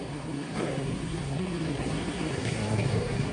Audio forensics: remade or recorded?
remade